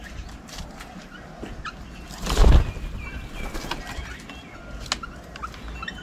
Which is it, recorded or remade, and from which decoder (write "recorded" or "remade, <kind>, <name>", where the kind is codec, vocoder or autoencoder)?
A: recorded